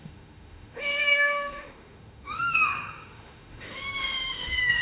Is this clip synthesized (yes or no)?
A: yes